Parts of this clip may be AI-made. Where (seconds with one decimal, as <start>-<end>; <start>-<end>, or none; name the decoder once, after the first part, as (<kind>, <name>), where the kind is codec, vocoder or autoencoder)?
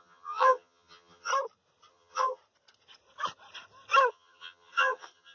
0.0-1.3 (vocoder, HiFi-GAN); 1.9-2.4; 4.1-5.3